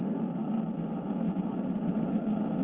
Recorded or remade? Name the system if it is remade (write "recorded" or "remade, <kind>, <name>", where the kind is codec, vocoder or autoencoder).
recorded